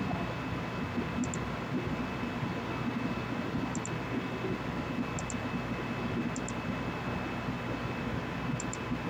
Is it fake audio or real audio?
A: real